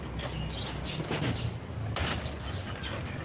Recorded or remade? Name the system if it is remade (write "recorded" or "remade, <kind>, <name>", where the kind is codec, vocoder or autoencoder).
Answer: recorded